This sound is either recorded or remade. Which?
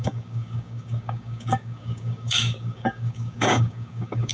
remade